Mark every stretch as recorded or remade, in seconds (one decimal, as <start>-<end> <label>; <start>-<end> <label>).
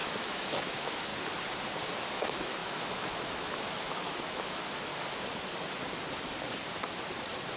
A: 0.0-1.1 remade; 1.1-2.0 recorded; 2.0-4.9 remade; 4.9-7.6 recorded